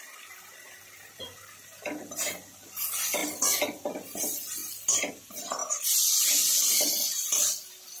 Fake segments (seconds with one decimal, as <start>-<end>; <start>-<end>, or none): none